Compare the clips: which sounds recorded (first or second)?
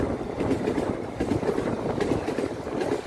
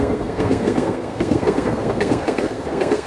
first